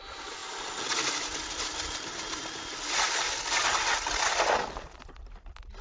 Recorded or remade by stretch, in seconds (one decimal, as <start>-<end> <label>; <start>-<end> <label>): 0.0-5.8 recorded